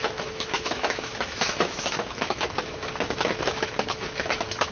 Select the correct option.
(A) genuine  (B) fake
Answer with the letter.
B